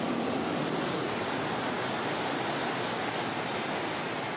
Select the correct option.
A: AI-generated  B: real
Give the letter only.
B